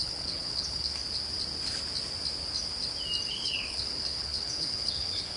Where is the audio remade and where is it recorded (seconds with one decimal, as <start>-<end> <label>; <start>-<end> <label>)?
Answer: 0.0-1.0 remade; 1.0-3.3 recorded; 3.3-5.4 remade